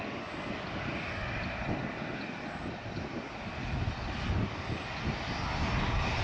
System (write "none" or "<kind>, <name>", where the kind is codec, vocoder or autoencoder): none